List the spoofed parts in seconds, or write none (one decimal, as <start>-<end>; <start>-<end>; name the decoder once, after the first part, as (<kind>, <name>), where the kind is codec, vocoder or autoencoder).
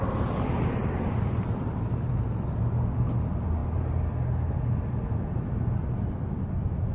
none